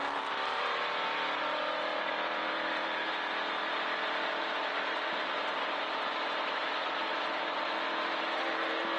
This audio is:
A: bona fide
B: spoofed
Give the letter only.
B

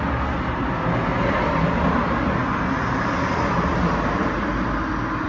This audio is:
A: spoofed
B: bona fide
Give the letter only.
B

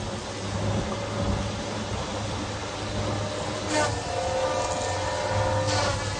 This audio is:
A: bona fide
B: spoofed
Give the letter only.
A